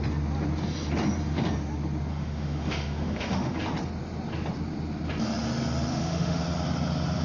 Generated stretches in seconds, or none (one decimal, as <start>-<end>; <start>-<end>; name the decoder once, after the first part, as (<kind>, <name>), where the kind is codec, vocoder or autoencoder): 2.1-3.6 (autoencoder, DAC-VAE); 5.9-6.4